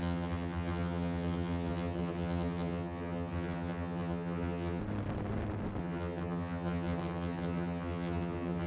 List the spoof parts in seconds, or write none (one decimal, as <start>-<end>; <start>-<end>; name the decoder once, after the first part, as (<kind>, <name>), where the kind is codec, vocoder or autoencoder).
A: 0.0-4.8 (vocoder, HiFi-GAN); 5.8-8.7